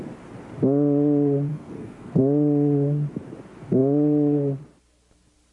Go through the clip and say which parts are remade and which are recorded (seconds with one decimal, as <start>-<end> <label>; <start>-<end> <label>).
0.0-1.5 recorded; 1.5-2.2 remade; 2.2-5.5 recorded